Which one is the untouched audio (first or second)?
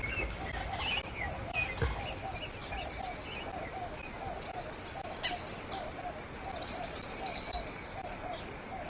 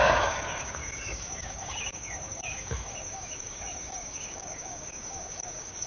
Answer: first